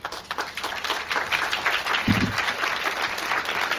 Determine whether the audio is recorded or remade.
recorded